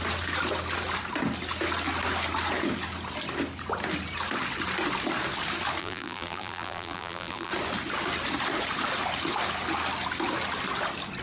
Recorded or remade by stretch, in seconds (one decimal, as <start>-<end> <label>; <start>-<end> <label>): 0.0-5.8 recorded; 5.8-7.5 remade; 7.5-11.2 recorded